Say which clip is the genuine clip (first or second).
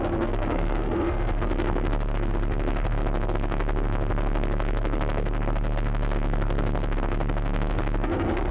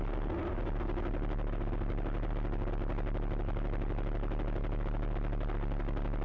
second